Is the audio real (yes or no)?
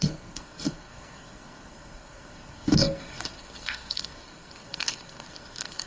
no